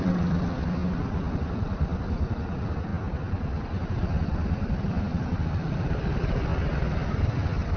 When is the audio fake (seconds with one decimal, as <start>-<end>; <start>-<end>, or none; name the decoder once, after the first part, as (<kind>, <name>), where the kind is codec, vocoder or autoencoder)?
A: 0.0-0.8 (vocoder, BigVGAN v2); 1.4-2.9; 4.7-6.5; 7.1-7.8